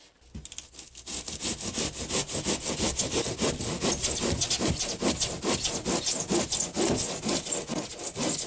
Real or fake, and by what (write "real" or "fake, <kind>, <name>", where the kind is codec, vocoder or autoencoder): real